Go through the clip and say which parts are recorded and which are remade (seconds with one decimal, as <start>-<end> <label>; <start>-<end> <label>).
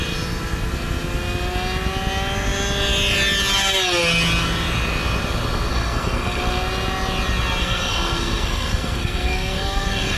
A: 0.0-5.7 recorded; 5.7-6.4 remade; 6.4-7.6 recorded; 7.6-10.2 remade